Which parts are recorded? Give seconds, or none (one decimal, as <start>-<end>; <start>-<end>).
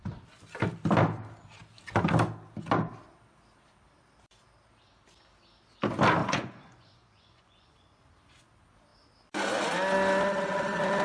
0.0-6.2; 8.0-11.0